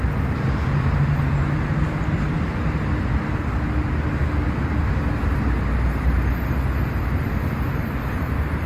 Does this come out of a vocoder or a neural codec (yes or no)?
no